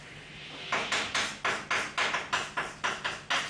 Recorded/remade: recorded